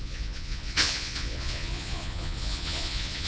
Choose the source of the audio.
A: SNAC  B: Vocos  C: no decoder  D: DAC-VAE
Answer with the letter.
B